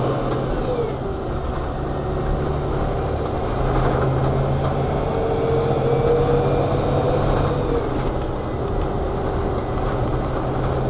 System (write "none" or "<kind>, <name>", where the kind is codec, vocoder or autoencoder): none